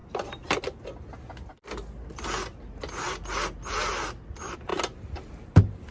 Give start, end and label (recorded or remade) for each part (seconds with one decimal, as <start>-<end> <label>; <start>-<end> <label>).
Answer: 0.0-5.9 recorded